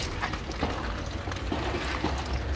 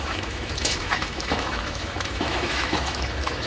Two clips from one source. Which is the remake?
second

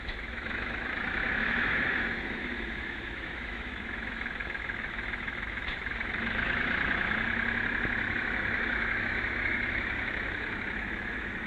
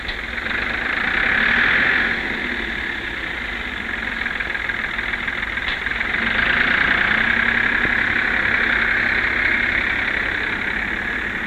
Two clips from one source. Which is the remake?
first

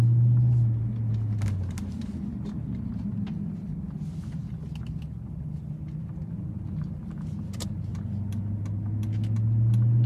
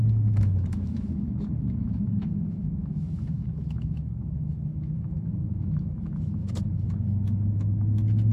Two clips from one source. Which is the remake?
second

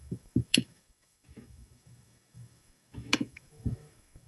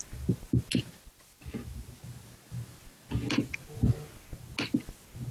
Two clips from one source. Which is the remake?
first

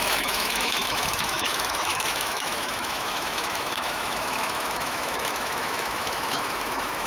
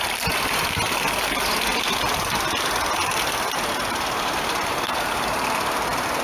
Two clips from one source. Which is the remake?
first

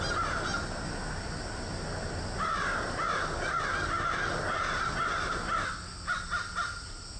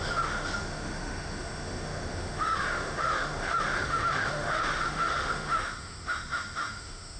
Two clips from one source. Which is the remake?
second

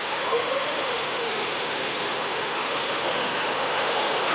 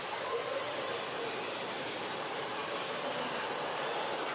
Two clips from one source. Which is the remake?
first